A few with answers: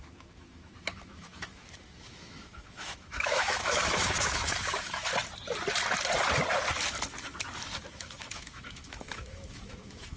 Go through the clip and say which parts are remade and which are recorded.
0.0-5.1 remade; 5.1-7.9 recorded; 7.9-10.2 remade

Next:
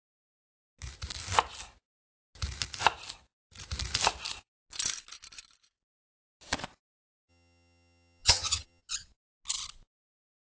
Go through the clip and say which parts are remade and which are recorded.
0.0-7.3 recorded; 7.3-8.8 remade; 8.8-10.6 recorded

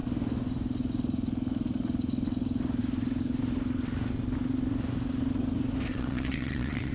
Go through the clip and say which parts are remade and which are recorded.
0.0-5.9 recorded; 5.9-6.9 remade

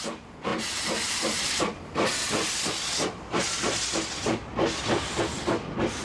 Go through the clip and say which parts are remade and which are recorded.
0.0-6.0 recorded

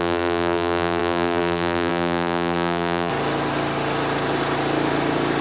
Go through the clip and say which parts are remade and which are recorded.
0.0-3.1 remade; 3.1-5.4 recorded

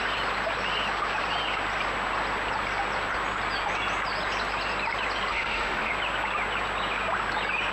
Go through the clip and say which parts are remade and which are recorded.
0.0-5.3 recorded; 5.3-5.9 remade; 5.9-7.7 recorded